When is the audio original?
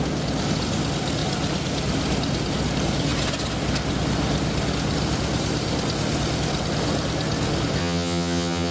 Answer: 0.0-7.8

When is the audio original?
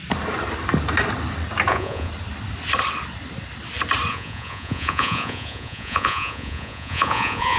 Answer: 0.0-1.7; 2.1-4.1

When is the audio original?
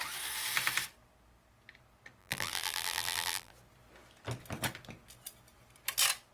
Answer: 0.0-2.2; 3.5-6.3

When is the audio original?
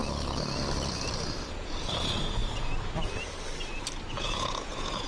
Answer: 0.0-1.5; 2.4-4.1